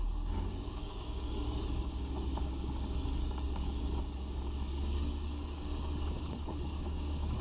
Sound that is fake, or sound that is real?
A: fake